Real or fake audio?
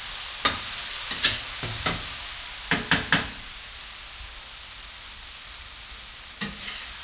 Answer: real